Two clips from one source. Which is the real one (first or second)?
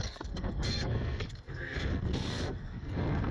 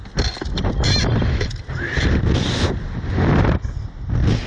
second